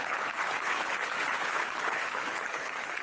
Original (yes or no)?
no